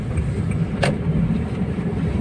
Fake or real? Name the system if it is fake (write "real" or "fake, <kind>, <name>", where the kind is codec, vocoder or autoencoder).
fake, vocoder, BigVGAN v2